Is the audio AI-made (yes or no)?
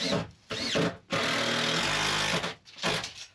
no